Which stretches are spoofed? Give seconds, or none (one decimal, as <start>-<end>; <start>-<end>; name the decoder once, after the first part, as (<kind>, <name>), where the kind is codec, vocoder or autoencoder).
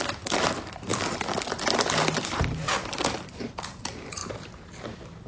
0.0-0.9 (vocoder, BigVGAN v2); 2.2-5.3